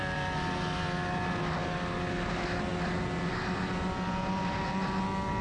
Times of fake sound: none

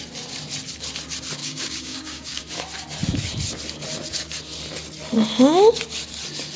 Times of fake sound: 1.4-2.4 (codec, DAC)

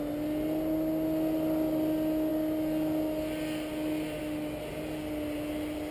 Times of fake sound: none

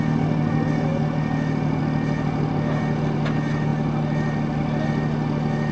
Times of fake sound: none

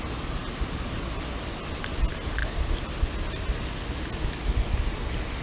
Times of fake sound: none